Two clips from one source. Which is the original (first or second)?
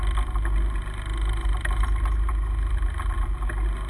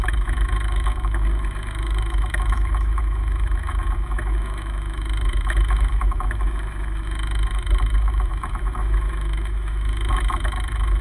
first